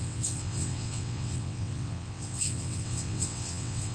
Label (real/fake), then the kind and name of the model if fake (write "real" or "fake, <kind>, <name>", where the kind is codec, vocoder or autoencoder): fake, vocoder, WaveNeXt